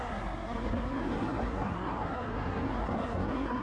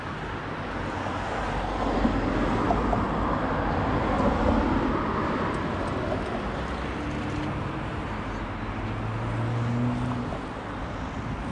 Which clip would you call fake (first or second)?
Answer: first